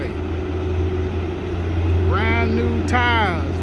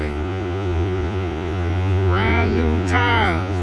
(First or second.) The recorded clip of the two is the first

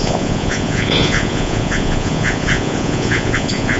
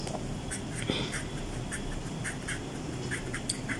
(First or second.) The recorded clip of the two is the second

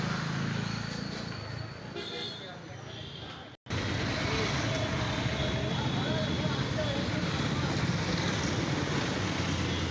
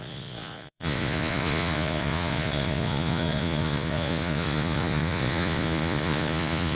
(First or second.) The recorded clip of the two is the first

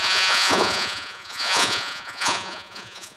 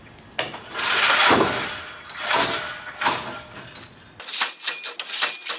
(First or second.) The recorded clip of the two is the second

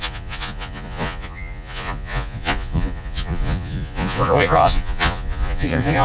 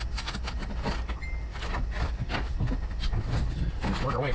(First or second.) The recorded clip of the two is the second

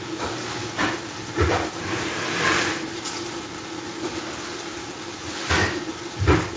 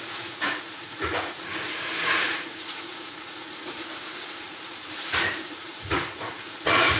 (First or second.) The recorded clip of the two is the first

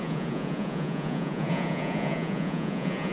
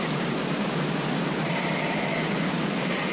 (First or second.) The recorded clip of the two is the second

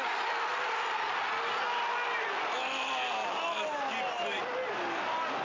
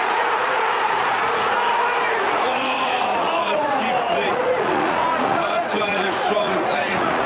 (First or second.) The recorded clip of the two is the first